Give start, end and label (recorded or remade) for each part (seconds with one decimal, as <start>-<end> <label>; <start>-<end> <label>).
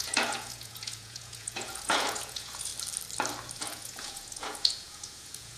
0.0-2.7 remade; 2.7-3.6 recorded; 3.6-5.6 remade